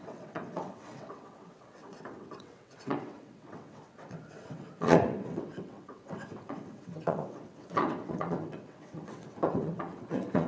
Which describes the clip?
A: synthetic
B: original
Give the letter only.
A